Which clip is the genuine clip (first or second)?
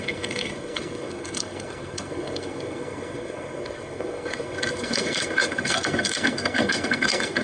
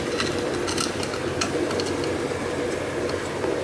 second